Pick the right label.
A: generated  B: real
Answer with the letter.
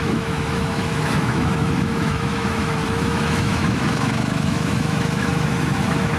A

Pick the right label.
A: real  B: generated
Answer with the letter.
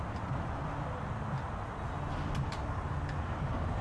A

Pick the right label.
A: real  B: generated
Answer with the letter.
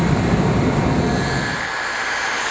A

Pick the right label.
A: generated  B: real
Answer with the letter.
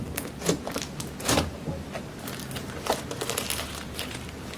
B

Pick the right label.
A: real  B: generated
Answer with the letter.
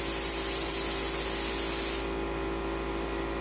A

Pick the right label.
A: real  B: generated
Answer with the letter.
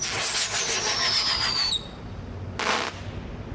A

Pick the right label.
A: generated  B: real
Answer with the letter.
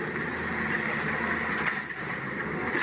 B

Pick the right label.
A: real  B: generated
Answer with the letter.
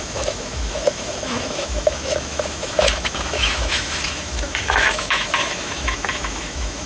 B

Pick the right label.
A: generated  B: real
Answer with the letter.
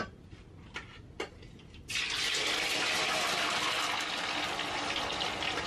B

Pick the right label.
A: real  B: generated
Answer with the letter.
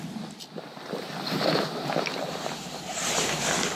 A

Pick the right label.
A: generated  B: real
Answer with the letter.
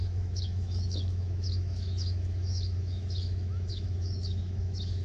A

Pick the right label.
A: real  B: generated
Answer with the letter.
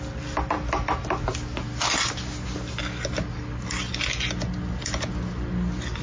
A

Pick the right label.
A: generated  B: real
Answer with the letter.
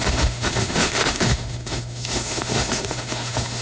A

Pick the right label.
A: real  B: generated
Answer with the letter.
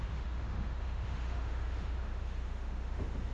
B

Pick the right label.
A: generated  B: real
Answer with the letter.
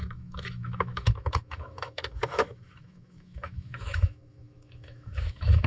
A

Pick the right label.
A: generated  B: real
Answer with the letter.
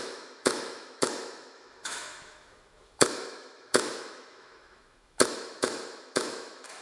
A